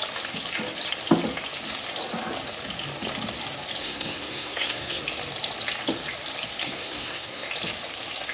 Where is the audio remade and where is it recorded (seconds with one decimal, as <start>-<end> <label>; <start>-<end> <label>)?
0.0-3.8 recorded; 3.8-5.0 remade; 5.0-6.6 recorded; 6.6-7.5 remade; 7.5-8.3 recorded